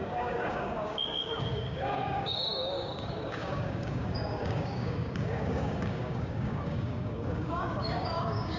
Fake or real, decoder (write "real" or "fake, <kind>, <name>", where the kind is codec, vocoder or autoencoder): fake, codec, DAC